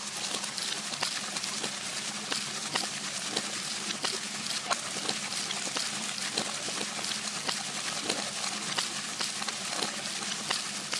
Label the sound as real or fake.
real